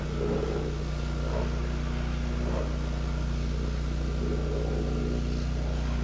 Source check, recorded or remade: recorded